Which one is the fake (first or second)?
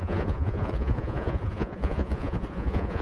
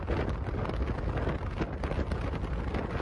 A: first